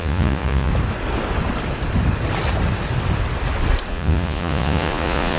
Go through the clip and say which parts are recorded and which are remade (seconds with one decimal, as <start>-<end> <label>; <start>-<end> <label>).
0.0-0.7 remade; 0.7-3.9 recorded; 3.9-5.4 remade